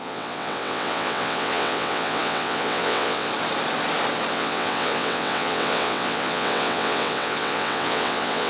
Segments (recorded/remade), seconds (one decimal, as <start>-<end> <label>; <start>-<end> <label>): 0.0-3.3 remade; 3.3-4.3 recorded; 4.3-8.5 remade